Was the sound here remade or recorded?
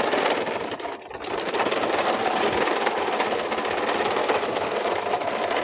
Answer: remade